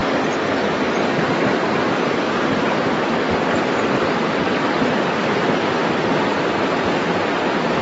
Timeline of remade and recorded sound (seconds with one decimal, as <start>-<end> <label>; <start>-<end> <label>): 0.0-7.8 recorded